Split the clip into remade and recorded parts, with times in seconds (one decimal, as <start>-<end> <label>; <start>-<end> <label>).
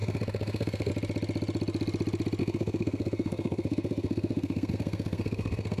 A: 0.0-0.9 remade; 0.9-2.4 recorded; 2.4-5.8 remade